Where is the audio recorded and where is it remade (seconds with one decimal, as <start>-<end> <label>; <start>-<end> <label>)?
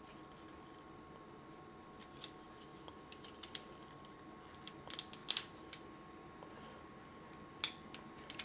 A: 0.0-8.4 recorded